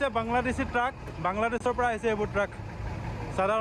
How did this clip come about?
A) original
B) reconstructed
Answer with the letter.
A